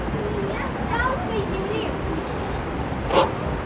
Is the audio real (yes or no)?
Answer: yes